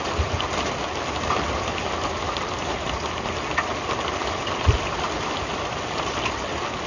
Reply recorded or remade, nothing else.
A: recorded